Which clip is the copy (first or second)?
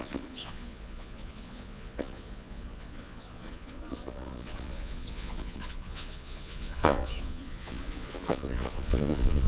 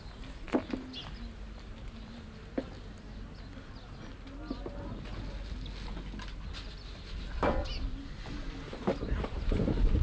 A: first